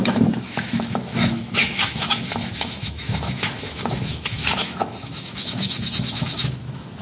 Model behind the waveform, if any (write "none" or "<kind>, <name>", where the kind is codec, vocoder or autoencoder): autoencoder, DAC-VAE